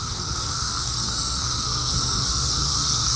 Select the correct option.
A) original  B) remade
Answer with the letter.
B